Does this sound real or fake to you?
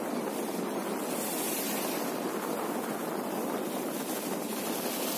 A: real